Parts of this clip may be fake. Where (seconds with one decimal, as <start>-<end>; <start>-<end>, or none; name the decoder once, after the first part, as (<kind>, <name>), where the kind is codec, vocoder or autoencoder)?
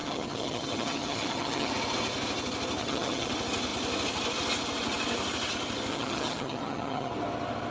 0.0-1.7 (vocoder, HiFi-GAN); 2.8-3.3; 5.9-7.1